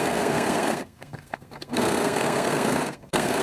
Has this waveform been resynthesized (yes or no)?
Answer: yes